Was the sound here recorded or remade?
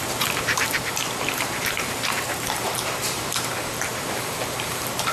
remade